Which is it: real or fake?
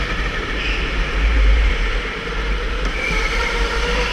fake